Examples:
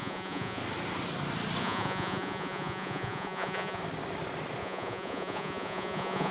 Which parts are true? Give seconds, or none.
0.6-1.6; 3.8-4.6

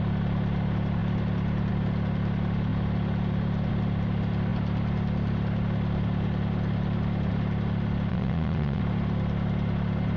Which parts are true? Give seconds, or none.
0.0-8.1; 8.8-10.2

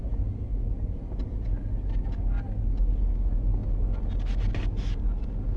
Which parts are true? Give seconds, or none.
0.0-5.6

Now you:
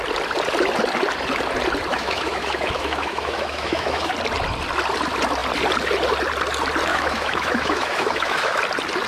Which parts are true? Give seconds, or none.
0.0-1.9; 4.1-6.9; 8.6-9.1

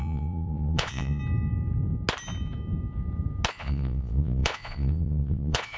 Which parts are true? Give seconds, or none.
1.2-3.5

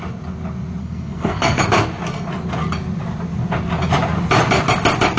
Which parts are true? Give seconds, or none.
0.0-0.8; 1.6-5.2